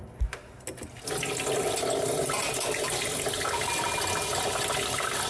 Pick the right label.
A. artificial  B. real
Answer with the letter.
B